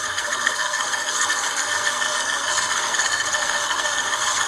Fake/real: fake